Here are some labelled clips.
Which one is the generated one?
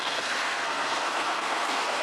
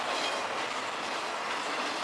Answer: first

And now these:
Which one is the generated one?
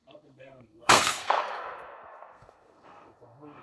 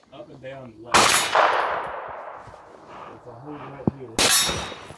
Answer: first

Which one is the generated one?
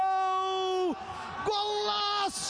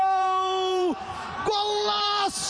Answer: second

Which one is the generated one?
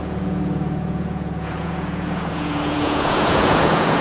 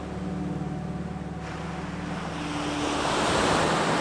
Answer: first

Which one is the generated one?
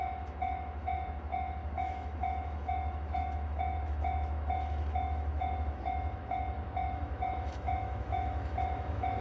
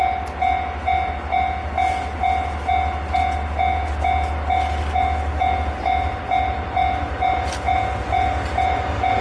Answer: first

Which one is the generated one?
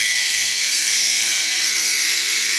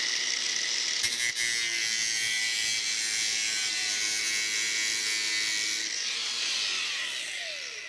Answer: first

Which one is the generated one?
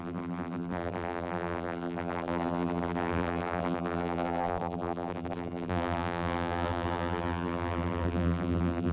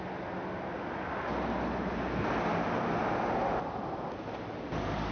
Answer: first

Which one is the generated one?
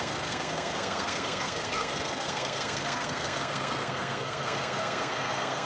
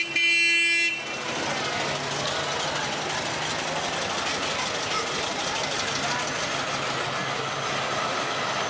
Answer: first